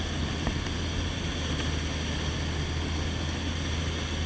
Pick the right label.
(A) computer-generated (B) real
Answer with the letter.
B